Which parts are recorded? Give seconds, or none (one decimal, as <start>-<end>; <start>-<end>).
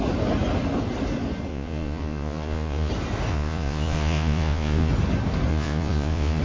0.0-1.5; 2.9-3.3; 4.9-5.5